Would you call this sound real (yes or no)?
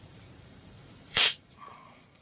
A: no